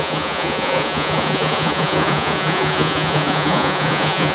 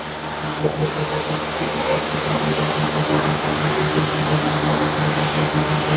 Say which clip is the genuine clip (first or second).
second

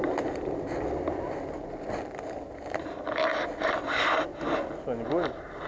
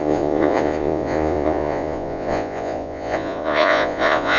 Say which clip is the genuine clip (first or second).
first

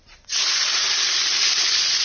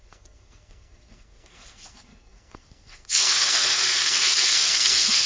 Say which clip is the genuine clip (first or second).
first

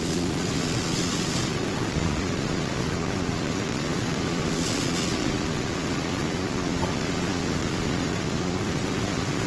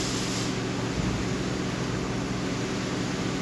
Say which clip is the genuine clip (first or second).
second